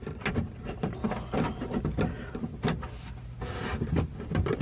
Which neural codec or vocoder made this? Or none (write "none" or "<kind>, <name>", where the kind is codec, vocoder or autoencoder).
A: none